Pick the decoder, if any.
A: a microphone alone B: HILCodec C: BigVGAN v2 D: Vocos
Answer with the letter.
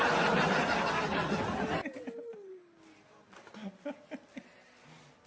A